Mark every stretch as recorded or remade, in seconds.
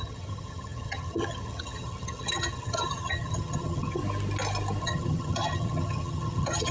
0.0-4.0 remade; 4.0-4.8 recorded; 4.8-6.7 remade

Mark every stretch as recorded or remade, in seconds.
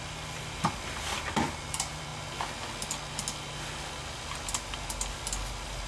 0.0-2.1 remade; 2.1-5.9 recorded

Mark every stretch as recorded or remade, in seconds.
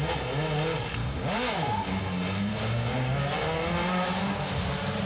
0.0-1.0 recorded; 1.0-2.0 remade; 2.0-2.5 recorded; 2.5-3.2 remade; 3.2-5.1 recorded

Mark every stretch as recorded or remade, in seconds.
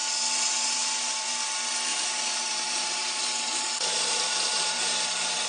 0.0-1.9 recorded; 1.9-5.5 remade